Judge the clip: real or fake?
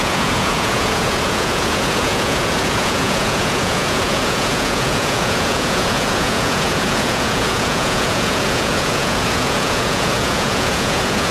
fake